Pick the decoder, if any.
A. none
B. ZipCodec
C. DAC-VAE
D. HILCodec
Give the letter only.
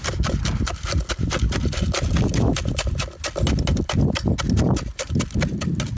A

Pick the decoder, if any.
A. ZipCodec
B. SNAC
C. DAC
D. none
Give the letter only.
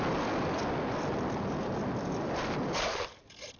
D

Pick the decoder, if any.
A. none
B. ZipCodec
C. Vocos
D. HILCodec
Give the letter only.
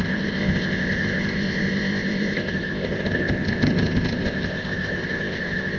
B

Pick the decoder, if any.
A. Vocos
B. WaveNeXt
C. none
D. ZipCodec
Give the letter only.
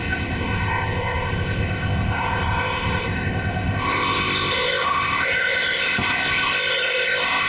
D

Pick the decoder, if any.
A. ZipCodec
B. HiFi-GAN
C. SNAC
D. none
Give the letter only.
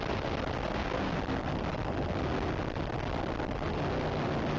D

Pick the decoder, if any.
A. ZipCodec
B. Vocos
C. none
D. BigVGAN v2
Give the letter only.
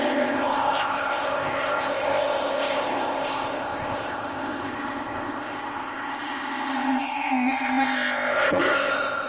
A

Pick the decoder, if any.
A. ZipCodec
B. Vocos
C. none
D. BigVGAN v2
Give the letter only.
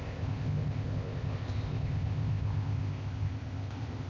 A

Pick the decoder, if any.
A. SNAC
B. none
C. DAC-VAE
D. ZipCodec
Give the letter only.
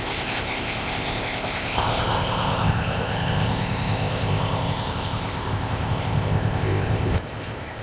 D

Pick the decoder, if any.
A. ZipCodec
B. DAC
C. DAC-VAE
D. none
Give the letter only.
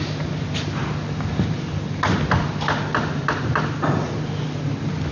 D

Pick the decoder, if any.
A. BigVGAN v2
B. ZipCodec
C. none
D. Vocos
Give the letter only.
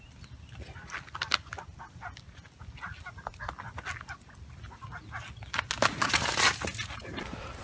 C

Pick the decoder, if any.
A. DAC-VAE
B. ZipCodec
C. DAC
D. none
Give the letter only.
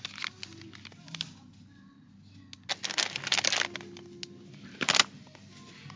D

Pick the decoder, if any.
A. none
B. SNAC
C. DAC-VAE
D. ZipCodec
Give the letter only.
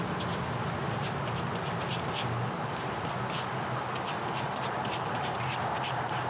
A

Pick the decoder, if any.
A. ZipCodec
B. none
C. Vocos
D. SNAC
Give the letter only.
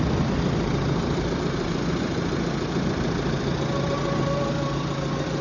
B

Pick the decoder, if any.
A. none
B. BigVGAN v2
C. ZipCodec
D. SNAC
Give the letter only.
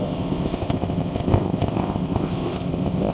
C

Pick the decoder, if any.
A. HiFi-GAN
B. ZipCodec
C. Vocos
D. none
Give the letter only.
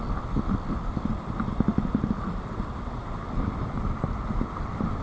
D